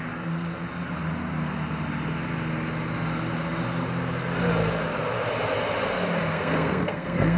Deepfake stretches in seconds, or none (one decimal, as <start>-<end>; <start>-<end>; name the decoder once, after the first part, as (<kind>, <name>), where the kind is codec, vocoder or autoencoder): 6.3-7.4 (codec, SNAC)